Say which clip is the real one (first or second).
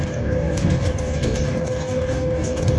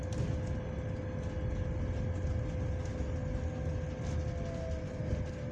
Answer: second